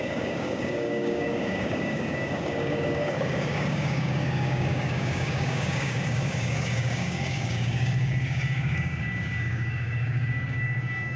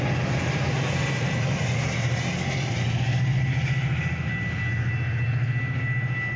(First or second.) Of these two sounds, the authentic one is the second